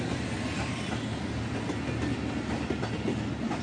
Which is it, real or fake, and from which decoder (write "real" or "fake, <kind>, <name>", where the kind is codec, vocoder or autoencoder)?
real